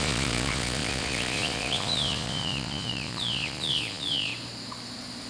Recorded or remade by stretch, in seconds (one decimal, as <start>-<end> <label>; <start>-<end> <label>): 0.0-4.3 remade; 4.3-5.3 recorded

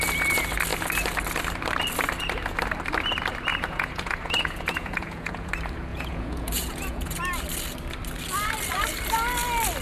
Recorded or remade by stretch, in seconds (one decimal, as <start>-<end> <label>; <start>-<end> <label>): 0.0-3.5 recorded; 3.5-5.5 remade; 5.5-5.9 recorded; 5.9-7.2 remade; 7.2-9.8 recorded

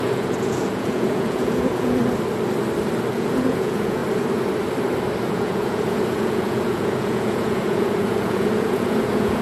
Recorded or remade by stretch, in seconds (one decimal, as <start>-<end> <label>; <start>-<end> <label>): 0.0-2.0 remade; 2.0-3.1 recorded; 3.1-4.0 remade; 4.0-5.3 recorded; 5.3-9.4 remade

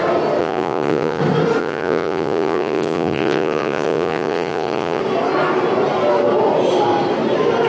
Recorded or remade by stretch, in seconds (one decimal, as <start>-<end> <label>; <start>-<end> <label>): 0.0-0.4 recorded; 0.4-1.2 remade; 1.2-1.6 recorded; 1.6-5.0 remade; 5.0-7.7 recorded

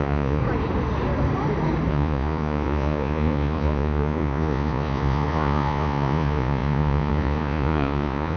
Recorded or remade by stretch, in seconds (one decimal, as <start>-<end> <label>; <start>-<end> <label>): 0.0-0.4 remade; 0.4-1.9 recorded; 1.9-8.4 remade

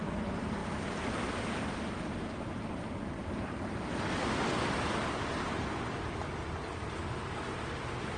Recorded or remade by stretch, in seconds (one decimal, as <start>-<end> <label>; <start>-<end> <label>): 0.0-8.2 recorded

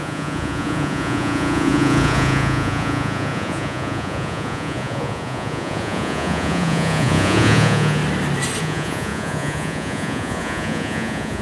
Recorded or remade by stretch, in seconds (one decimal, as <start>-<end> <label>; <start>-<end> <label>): 0.0-8.0 remade; 8.0-8.6 recorded; 8.6-11.4 remade

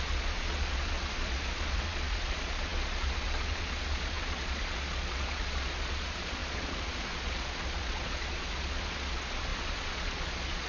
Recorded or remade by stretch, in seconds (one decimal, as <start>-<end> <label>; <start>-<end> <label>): 0.0-10.7 remade